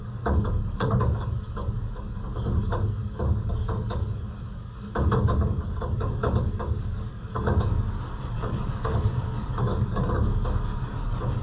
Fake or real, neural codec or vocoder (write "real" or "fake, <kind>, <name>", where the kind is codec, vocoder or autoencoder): fake, codec, DAC